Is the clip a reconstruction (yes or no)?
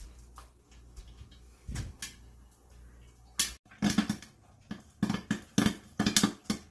no